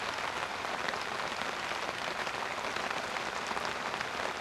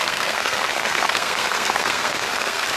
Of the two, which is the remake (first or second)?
second